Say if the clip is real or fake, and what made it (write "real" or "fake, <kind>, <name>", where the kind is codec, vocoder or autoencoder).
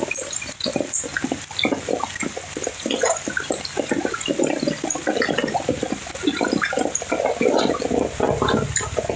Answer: real